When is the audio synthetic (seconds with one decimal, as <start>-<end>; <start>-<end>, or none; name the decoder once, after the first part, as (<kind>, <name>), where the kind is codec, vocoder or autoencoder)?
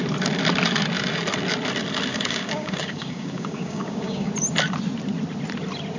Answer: 2.1-4.3 (codec, DAC)